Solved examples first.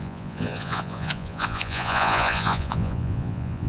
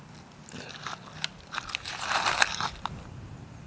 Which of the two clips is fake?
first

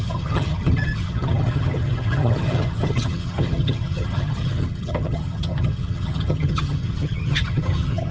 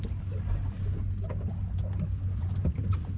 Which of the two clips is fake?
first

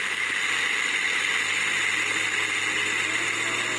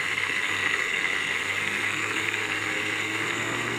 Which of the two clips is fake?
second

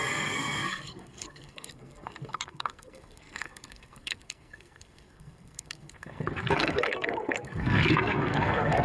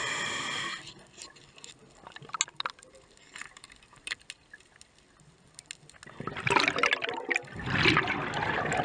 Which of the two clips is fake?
first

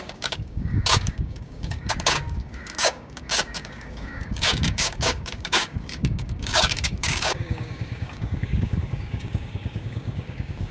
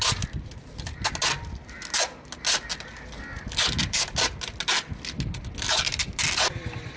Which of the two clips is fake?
first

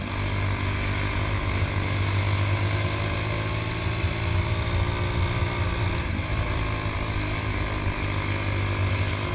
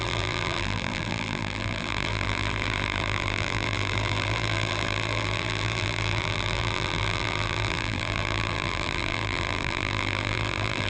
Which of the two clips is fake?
second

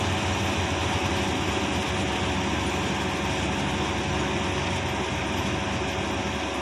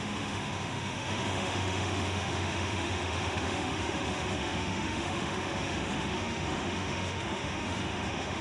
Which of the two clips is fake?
second